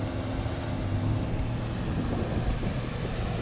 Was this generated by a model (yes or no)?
no